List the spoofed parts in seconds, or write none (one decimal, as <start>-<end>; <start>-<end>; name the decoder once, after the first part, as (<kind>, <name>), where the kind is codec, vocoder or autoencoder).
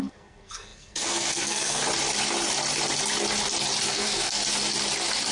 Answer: 0.0-1.8 (codec, SNAC); 3.9-4.4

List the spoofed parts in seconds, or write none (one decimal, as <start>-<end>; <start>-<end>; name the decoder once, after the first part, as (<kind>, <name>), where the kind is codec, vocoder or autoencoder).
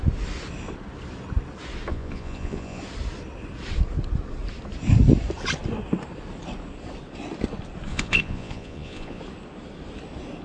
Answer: 1.9-2.8 (vocoder, Vocos); 7.9-9.2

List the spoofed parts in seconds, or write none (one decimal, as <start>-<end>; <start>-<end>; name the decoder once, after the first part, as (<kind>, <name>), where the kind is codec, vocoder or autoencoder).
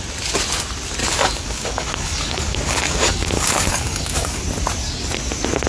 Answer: 1.0-4.4 (codec, DAC)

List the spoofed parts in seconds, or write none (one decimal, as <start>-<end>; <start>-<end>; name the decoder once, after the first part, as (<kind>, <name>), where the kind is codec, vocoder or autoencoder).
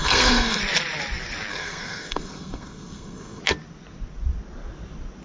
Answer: 0.0-0.6 (codec, SNAC); 1.5-3.4